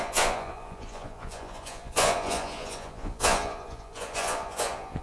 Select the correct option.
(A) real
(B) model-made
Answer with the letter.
B